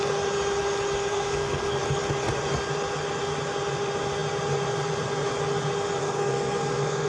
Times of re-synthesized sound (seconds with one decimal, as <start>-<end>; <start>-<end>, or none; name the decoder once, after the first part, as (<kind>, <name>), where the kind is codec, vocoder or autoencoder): 1.1-1.8 (codec, SNAC); 6.0-7.1